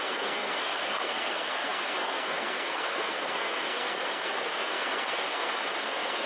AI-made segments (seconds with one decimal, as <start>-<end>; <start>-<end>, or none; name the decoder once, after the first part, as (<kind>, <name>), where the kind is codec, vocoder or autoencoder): 0.0-6.3 (codec, SNAC)